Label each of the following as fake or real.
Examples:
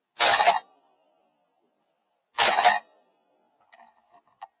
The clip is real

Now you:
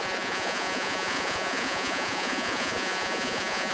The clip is fake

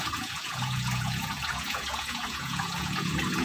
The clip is fake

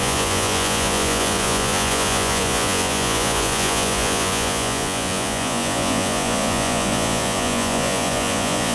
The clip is fake